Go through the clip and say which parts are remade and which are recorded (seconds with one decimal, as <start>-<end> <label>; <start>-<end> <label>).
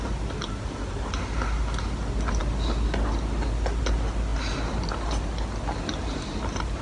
0.0-6.8 recorded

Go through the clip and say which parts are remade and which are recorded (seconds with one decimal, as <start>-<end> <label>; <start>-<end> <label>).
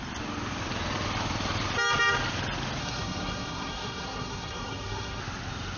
0.0-2.8 recorded; 2.8-5.2 remade; 5.2-5.8 recorded